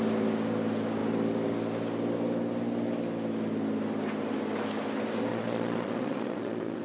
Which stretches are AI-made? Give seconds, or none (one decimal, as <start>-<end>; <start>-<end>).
5.3-6.8